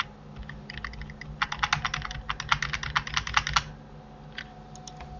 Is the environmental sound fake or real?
real